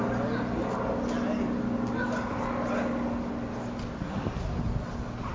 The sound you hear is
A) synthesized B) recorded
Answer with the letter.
B